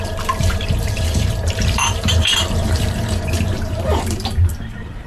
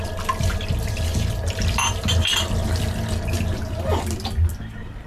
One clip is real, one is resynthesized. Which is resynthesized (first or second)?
first